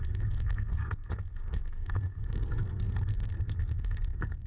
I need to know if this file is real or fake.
fake